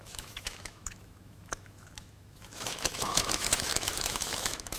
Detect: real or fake fake